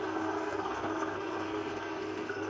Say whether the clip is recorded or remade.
remade